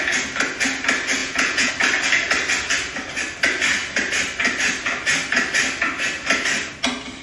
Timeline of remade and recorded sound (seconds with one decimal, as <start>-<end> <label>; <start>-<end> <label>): 0.0-1.2 recorded; 1.2-1.7 remade; 1.7-7.2 recorded